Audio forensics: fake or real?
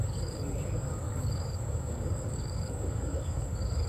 fake